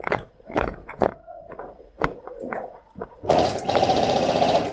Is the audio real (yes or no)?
no